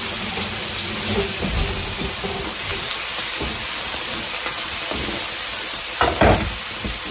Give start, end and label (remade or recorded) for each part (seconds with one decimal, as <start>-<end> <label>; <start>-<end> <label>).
0.0-7.1 recorded